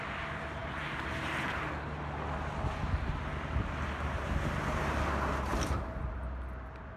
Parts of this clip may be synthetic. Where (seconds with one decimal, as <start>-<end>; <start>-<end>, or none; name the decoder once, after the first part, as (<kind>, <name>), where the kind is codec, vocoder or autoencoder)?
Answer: none